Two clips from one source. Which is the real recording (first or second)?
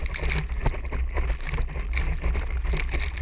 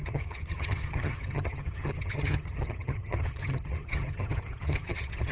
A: first